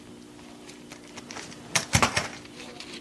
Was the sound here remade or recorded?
recorded